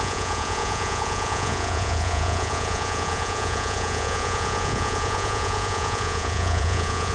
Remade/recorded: remade